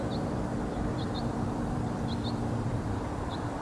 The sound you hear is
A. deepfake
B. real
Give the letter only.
A